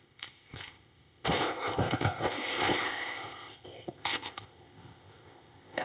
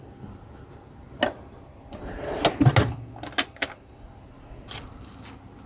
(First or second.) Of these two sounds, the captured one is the second